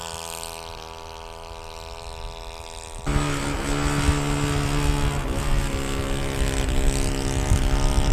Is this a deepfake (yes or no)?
no